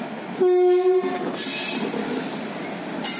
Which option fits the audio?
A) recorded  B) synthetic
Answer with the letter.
A